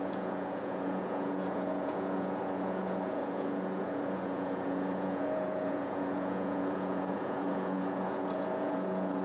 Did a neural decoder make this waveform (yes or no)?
yes